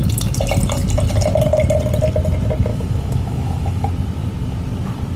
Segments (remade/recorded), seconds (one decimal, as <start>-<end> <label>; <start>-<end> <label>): 0.0-2.7 recorded; 2.7-3.9 remade; 3.9-5.2 recorded